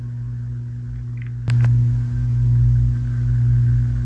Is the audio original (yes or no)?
yes